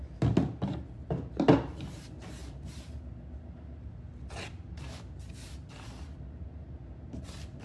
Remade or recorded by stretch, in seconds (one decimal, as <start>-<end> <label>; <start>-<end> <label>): 0.0-7.6 recorded